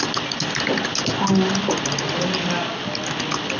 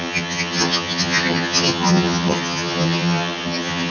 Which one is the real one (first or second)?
first